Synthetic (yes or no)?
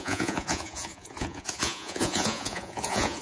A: yes